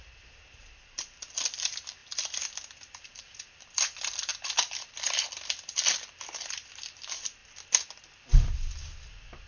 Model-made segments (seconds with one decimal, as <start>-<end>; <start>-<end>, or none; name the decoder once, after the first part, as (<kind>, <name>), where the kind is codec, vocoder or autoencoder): 0.0-4.3 (vocoder, BigVGAN v2); 5.6-7.4; 8.0-9.5